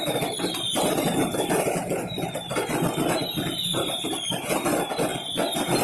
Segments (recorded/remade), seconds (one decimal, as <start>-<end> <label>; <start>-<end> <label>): 0.0-5.8 recorded